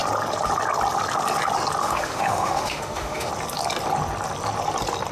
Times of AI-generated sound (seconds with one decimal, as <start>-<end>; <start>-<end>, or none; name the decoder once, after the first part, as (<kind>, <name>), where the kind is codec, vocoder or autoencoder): 1.8-3.3 (autoencoder, DAC-VAE)